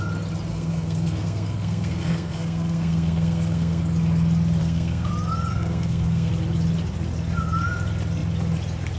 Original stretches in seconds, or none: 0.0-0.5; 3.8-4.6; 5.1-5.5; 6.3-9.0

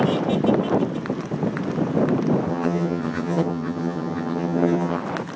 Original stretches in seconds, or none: 0.0-2.5; 5.0-5.4

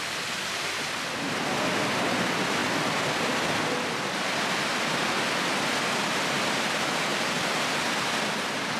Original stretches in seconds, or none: 0.0-7.1; 7.7-8.8

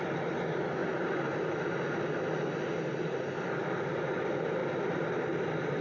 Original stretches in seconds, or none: 0.0-5.8

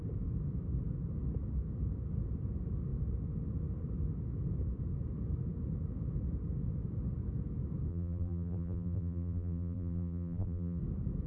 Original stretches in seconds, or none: 0.0-7.9; 10.8-11.3